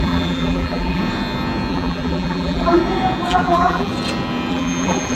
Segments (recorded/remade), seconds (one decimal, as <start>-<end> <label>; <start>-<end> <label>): 0.0-1.0 remade; 1.0-1.7 recorded; 1.7-2.8 remade; 2.8-3.3 recorded; 3.3-3.9 remade; 3.9-4.5 recorded; 4.5-5.1 remade